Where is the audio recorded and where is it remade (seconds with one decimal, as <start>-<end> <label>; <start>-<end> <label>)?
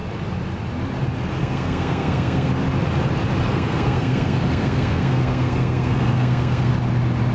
0.0-1.4 recorded; 1.4-2.5 remade; 2.5-3.5 recorded; 3.5-6.7 remade; 6.7-7.3 recorded